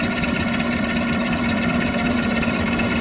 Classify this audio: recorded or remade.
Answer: remade